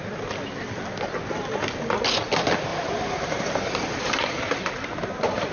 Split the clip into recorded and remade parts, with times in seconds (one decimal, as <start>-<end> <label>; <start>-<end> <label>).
0.0-2.7 recorded; 2.7-5.5 remade